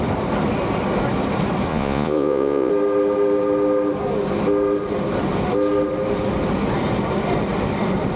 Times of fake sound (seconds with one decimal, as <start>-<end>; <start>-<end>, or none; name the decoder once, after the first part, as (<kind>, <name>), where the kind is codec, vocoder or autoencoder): 1.7-2.7 (vocoder, Vocos)